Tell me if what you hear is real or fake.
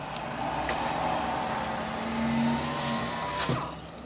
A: real